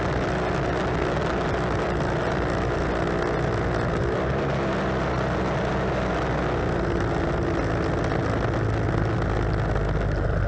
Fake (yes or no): no